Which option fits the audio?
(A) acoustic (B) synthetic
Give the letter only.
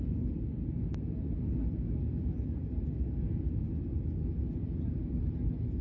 A